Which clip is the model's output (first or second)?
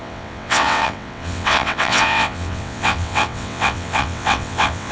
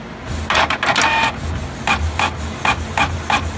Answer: first